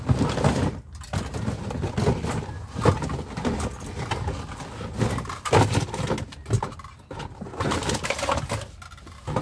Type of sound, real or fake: real